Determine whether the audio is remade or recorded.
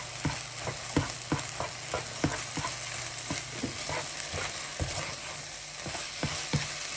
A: recorded